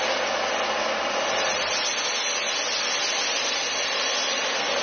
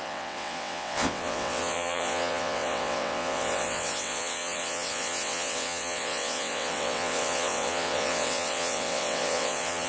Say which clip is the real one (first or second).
first